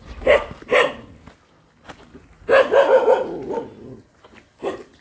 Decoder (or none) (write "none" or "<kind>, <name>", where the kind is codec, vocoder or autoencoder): none